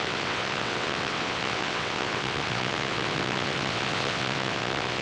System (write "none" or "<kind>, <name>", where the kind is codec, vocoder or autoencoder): vocoder, WaveNeXt